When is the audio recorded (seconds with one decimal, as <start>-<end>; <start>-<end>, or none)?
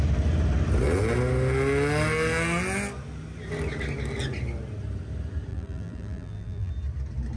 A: 0.0-5.5; 6.7-7.4